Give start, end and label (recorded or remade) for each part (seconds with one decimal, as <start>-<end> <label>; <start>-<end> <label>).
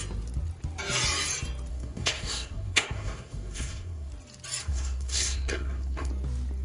0.0-1.7 recorded; 1.7-4.1 remade; 4.1-4.6 recorded; 4.6-6.1 remade; 6.1-6.6 recorded